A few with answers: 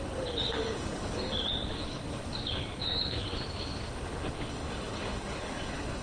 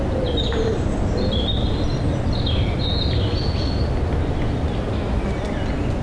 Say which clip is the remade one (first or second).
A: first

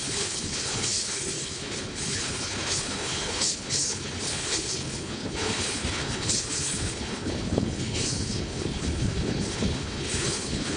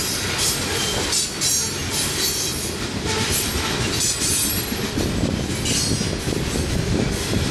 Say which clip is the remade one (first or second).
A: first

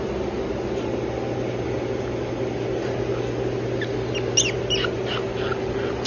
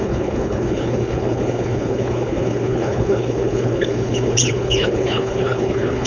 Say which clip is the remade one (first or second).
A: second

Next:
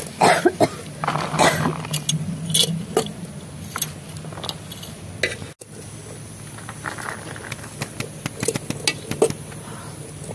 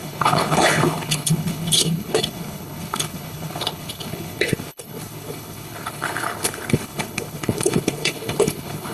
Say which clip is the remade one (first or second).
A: second